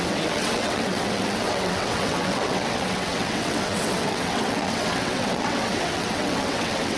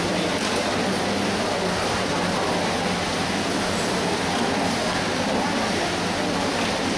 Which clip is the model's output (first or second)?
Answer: first